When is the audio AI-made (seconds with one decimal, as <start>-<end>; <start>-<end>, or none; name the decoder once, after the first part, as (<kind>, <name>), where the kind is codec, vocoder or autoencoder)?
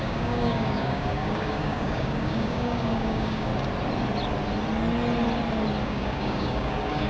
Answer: 0.0-3.5 (codec, DAC); 5.8-7.1